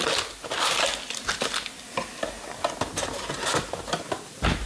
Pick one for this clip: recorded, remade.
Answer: recorded